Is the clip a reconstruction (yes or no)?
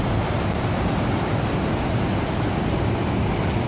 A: no